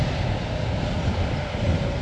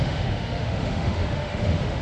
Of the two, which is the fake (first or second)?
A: second